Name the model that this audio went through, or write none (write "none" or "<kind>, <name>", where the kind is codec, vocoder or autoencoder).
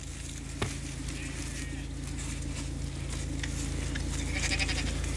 none